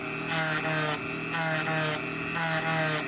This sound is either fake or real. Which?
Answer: real